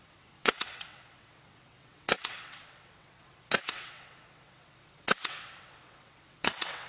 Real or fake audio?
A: fake